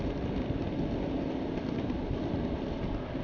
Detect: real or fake real